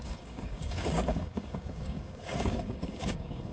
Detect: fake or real fake